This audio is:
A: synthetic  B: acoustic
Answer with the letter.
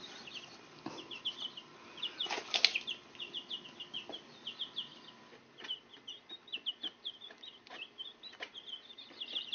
B